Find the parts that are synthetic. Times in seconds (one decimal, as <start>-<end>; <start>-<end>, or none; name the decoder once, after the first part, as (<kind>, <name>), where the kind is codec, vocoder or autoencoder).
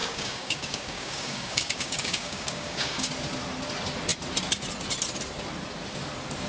0.0-3.1 (codec, DAC)